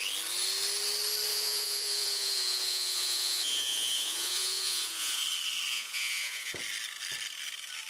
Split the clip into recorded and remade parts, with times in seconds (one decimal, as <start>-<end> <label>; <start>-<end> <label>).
0.0-1.3 recorded; 1.3-5.2 remade; 5.2-5.7 recorded; 5.7-6.5 remade; 6.5-7.9 recorded